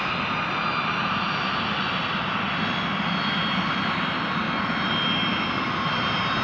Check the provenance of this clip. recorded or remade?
recorded